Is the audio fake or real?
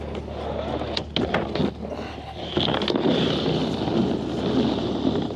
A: real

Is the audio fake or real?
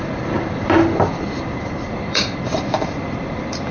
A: fake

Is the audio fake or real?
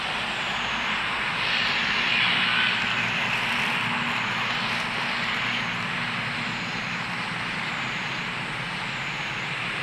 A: real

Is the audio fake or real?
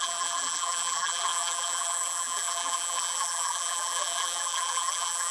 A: fake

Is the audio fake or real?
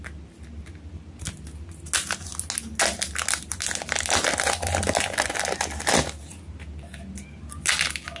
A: real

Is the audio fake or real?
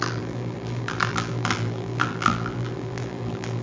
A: fake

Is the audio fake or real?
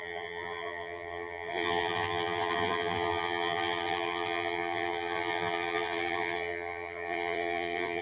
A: fake